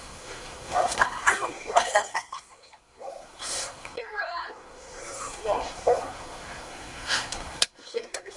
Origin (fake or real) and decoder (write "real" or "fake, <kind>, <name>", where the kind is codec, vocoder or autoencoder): fake, codec, SNAC